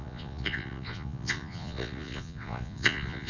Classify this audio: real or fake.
fake